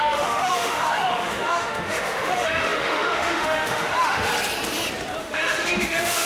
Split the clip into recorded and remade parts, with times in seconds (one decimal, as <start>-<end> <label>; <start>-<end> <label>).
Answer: 0.0-4.3 remade; 4.3-5.2 recorded; 5.2-6.3 remade